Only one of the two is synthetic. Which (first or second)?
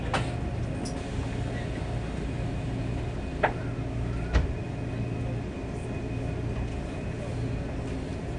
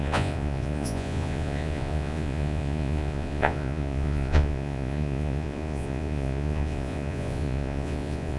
second